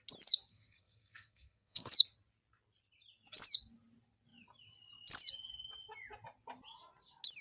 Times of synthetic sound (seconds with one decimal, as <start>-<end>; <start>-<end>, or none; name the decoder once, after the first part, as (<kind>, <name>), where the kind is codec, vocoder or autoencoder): 0.5-1.9 (codec, SNAC)